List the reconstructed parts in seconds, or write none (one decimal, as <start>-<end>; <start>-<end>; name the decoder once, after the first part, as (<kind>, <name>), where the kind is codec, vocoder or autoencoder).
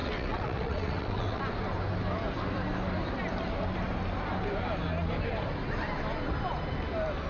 0.0-1.4 (vocoder, WaveNeXt)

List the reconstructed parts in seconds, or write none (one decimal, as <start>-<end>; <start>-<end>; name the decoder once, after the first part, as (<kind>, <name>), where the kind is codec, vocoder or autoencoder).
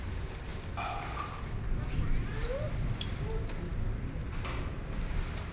none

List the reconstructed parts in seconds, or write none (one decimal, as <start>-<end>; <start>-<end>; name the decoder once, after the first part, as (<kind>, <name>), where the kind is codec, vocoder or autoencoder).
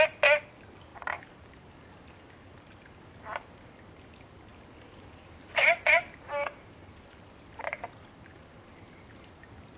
0.9-3.5 (vocoder, BigVGAN v2); 4.5-5.7; 6.3-8.9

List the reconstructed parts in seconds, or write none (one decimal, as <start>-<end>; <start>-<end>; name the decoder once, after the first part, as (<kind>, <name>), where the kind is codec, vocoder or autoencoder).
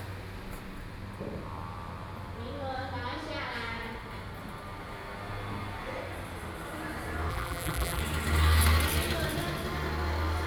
7.3-8.0 (vocoder, BigVGAN v2)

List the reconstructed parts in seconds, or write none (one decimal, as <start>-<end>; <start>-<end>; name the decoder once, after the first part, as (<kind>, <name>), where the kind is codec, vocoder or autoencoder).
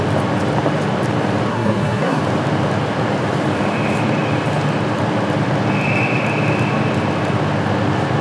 1.5-2.2 (codec, SNAC)